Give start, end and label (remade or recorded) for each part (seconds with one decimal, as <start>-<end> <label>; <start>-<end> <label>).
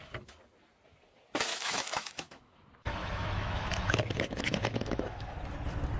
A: 0.0-1.5 recorded; 1.5-2.6 remade; 2.6-3.0 recorded; 3.0-5.3 remade; 5.3-6.0 recorded